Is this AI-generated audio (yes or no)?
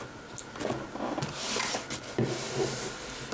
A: no